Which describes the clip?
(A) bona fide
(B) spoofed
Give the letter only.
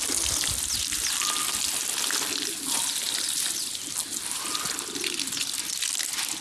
A